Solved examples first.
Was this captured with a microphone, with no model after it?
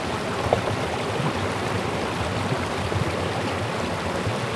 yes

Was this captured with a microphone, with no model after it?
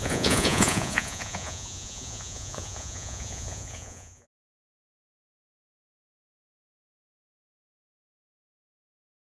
no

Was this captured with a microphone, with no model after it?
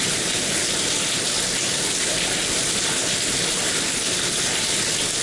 yes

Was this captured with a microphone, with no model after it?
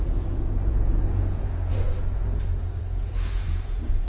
no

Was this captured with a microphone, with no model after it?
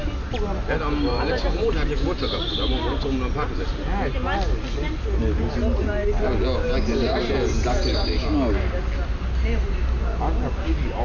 yes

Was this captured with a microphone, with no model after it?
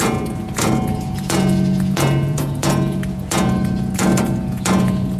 no